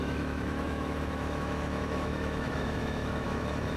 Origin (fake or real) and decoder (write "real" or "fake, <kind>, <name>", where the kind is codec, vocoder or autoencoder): fake, autoencoder, DAC-VAE